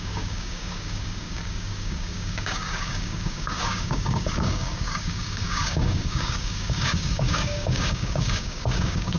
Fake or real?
fake